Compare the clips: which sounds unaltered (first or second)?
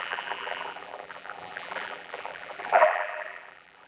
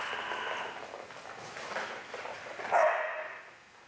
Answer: second